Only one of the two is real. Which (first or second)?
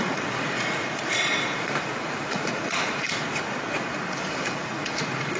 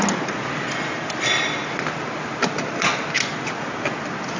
second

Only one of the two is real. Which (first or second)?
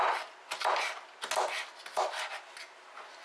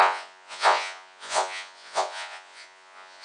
first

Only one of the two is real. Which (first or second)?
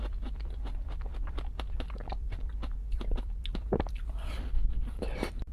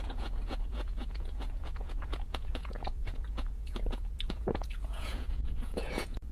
first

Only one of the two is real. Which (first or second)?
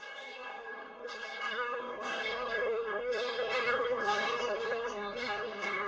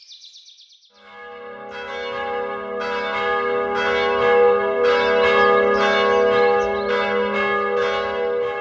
second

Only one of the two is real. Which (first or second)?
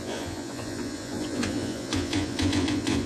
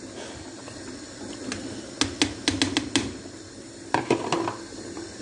second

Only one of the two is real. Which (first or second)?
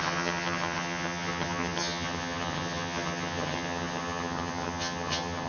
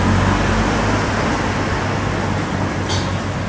second